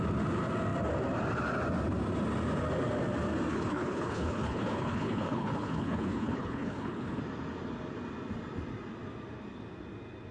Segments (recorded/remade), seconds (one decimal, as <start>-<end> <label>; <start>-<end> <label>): 0.0-3.5 recorded; 3.5-7.2 remade; 7.2-10.3 recorded